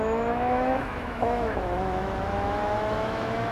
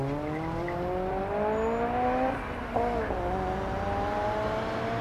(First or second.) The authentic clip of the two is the second